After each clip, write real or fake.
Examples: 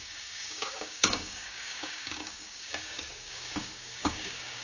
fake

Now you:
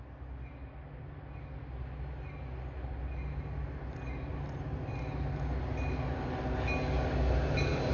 real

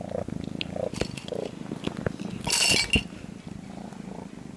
real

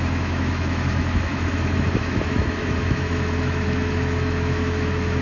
fake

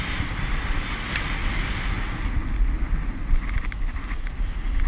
real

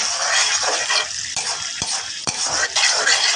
real